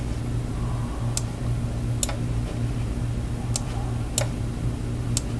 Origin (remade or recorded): recorded